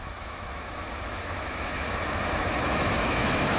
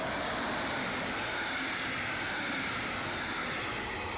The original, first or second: second